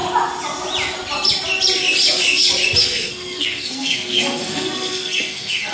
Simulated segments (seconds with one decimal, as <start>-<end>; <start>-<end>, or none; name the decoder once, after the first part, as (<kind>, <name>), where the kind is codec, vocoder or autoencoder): 2.8-5.7 (codec, SNAC)